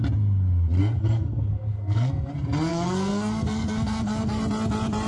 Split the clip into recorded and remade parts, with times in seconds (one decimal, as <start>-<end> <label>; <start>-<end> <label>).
0.0-0.8 recorded; 0.8-2.3 remade; 2.3-2.7 recorded; 2.7-4.4 remade; 4.4-5.1 recorded